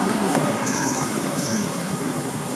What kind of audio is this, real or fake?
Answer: fake